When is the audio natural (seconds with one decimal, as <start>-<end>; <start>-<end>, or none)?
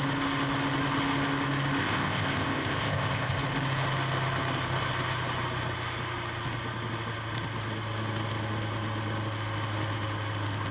0.0-1.8; 3.4-10.7